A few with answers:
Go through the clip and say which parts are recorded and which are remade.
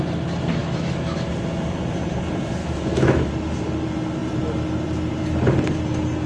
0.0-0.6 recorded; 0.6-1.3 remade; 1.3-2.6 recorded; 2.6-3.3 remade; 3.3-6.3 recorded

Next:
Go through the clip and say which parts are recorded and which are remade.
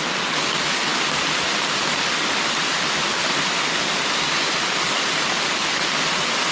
0.0-6.5 recorded